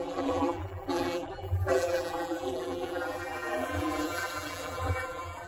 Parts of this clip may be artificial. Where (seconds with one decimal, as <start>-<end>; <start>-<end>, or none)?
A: 0.0-5.5